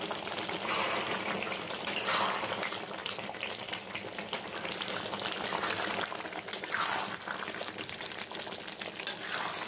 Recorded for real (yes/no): yes